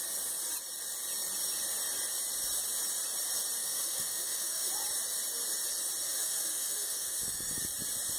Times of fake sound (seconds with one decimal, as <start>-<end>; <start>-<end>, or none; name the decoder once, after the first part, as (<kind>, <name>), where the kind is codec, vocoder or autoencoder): 3.6-4.7 (autoencoder, DAC-VAE); 6.0-7.6